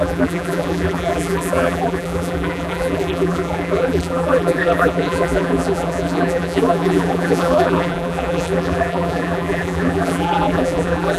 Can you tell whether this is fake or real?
fake